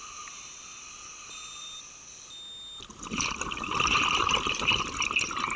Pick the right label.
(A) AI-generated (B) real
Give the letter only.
B